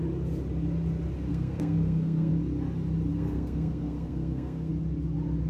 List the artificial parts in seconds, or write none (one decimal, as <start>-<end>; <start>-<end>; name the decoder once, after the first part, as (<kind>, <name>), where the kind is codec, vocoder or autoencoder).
1.3-2.3 (codec, SNAC); 3.1-4.7